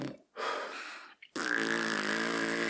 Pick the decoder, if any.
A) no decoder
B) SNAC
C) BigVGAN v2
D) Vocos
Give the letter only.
A